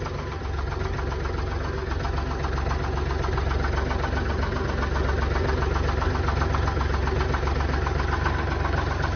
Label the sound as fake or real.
real